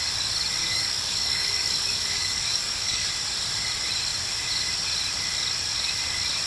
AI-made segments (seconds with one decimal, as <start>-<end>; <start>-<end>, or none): 0.6-3.1